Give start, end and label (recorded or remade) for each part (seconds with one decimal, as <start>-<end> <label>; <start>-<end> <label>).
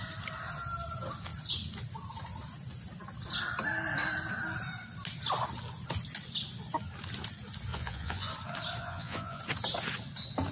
0.0-7.7 recorded; 7.7-8.3 remade; 8.3-8.8 recorded; 8.8-9.4 remade; 9.4-10.5 recorded